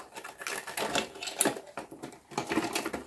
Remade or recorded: recorded